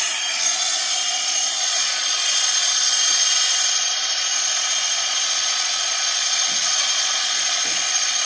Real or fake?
fake